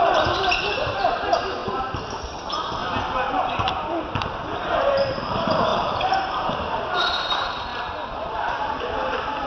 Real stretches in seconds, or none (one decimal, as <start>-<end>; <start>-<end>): 2.8-3.4; 7.7-8.3